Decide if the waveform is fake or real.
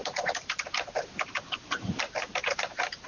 real